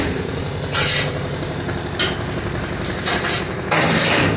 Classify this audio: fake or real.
fake